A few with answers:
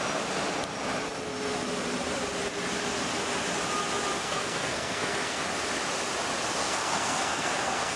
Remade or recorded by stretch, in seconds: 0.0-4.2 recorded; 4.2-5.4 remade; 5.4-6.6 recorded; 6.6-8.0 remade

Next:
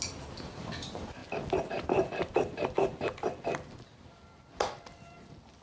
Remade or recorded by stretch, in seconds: 0.0-1.2 remade; 1.2-4.1 recorded; 4.1-5.6 remade

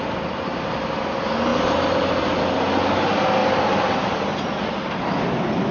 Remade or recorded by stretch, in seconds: 0.0-1.5 recorded; 1.5-2.4 remade; 2.4-3.4 recorded; 3.4-4.7 remade; 4.7-5.7 recorded

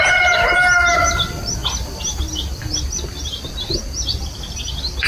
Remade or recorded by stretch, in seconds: 0.0-5.1 recorded

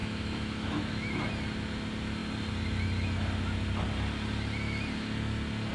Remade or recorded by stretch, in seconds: 0.0-1.3 remade; 1.3-5.7 recorded

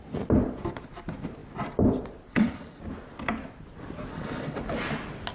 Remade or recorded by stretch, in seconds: 0.0-2.3 recorded; 2.3-2.8 remade; 2.8-4.1 recorded; 4.1-4.6 remade; 4.6-5.3 recorded

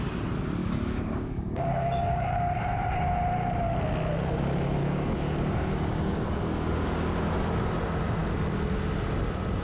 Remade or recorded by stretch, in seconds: 0.0-0.6 recorded; 0.6-2.5 remade; 2.5-4.8 recorded; 4.8-7.3 remade; 7.3-9.6 recorded